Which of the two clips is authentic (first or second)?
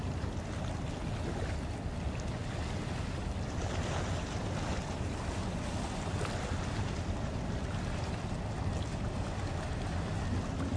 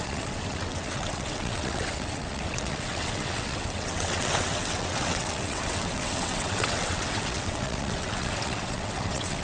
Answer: first